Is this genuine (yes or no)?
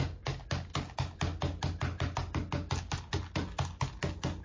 yes